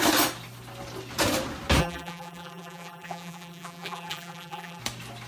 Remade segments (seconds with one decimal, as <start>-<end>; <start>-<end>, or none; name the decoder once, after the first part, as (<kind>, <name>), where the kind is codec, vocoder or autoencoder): 1.8-4.8 (vocoder, BigVGAN v2)